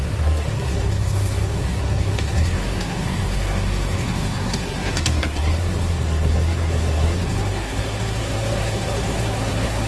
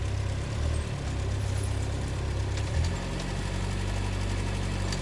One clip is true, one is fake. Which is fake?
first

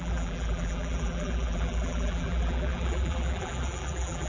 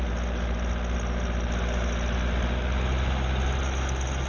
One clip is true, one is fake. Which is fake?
first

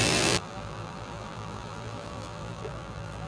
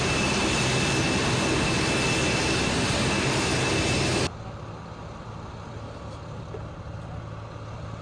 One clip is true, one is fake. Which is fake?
first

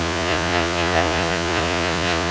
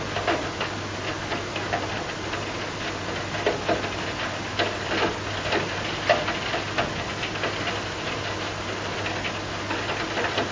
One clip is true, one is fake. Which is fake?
first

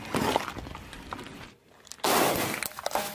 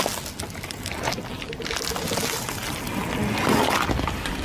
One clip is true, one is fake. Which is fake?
first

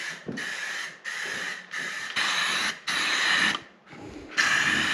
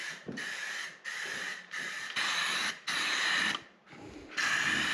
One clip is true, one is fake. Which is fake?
second